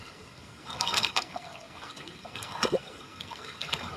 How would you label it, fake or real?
fake